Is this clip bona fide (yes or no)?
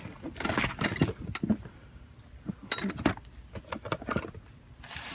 yes